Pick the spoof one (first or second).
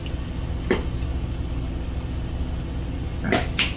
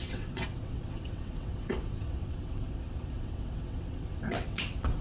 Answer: second